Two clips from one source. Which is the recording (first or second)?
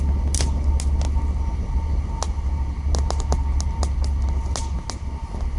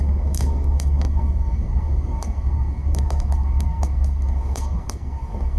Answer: first